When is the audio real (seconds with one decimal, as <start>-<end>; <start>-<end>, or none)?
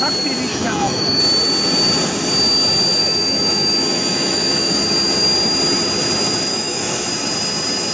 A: 0.0-0.5; 1.2-3.0; 4.7-6.5; 7.1-7.9